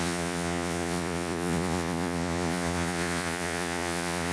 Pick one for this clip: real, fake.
fake